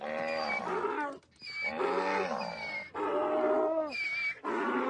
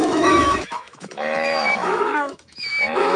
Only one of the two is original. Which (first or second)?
first